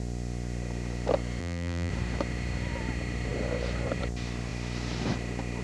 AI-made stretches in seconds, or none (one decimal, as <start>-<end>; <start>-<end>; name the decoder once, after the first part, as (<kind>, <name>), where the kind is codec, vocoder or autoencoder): 1.4-1.9 (vocoder, BigVGAN v2)